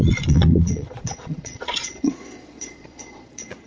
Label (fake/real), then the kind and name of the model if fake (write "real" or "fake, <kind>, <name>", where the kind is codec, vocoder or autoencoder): fake, vocoder, Vocos